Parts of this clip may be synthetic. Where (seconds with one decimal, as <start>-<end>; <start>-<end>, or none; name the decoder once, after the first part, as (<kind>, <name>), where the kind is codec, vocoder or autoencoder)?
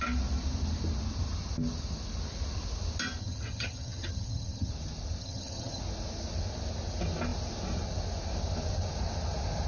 3.2-4.7 (vocoder, HiFi-GAN); 5.2-5.8